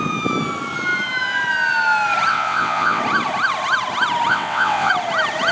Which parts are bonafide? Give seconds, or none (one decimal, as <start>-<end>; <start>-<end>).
0.0-2.3; 3.0-4.3; 4.9-5.5